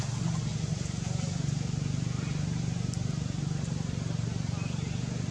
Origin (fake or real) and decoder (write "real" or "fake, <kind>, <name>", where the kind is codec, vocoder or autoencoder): real